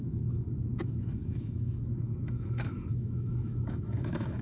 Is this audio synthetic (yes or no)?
yes